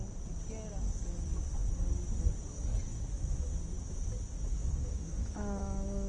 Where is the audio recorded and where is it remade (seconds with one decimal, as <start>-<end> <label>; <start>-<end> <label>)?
0.0-2.7 recorded; 2.7-3.6 remade; 3.6-4.6 recorded; 4.6-6.1 remade